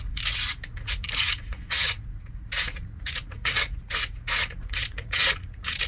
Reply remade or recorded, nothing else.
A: remade